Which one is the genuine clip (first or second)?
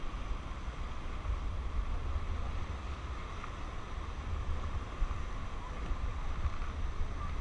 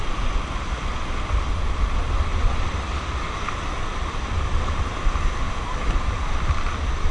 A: first